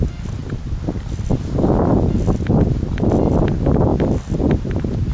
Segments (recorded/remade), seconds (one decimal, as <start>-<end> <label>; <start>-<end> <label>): 0.0-5.1 recorded